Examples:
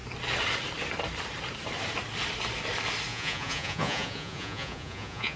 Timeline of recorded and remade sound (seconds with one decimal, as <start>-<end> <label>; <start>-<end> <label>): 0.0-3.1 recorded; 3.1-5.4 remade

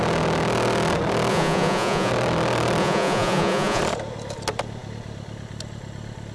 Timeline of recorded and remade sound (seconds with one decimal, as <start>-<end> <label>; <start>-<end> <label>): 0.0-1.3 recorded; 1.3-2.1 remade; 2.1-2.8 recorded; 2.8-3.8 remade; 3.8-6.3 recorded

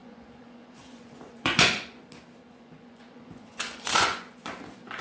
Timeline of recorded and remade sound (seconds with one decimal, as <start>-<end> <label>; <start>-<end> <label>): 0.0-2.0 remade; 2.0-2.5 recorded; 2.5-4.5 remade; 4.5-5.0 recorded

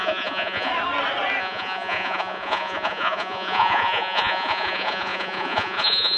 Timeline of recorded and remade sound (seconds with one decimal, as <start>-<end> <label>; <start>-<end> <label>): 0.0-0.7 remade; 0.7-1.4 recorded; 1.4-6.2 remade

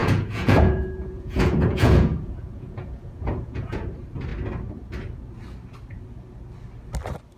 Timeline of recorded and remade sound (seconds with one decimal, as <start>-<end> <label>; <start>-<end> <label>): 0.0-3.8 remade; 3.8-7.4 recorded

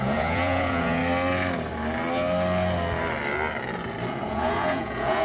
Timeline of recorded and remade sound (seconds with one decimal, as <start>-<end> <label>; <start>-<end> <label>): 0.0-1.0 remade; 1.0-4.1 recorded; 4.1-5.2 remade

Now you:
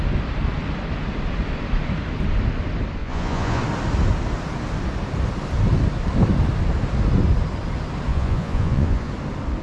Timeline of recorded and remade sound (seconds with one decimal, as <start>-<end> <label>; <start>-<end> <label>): 0.0-3.0 recorded; 3.0-3.6 remade; 3.6-8.1 recorded; 8.1-9.1 remade; 9.1-9.6 recorded

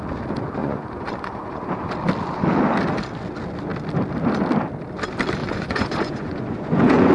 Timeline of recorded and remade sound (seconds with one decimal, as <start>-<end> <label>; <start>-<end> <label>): 0.0-0.6 recorded; 0.6-1.6 remade; 1.6-5.4 recorded; 5.4-7.1 remade